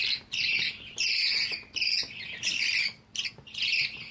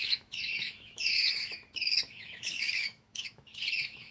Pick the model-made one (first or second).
second